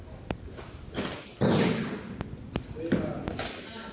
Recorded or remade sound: recorded